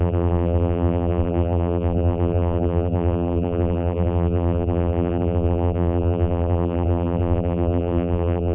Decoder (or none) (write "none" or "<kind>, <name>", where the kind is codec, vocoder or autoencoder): vocoder, BigVGAN v2